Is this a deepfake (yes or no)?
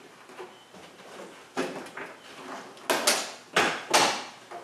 no